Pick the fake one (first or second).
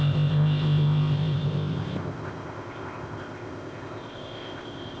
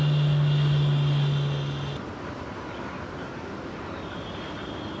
first